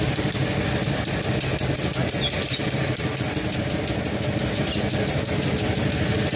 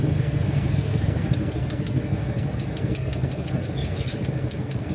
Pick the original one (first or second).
first